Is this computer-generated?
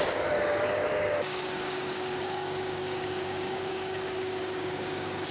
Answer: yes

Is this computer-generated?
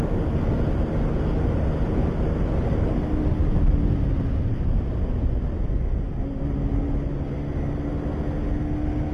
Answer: no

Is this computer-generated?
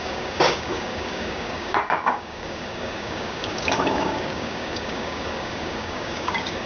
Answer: yes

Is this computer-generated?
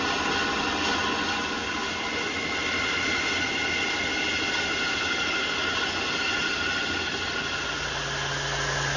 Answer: no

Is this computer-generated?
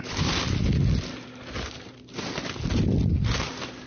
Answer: no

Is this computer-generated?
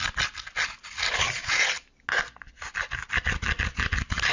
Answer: no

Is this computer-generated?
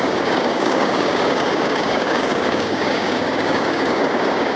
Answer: yes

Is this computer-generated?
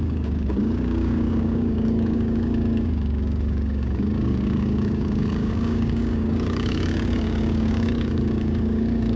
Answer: yes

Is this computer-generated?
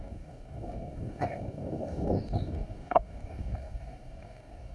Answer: yes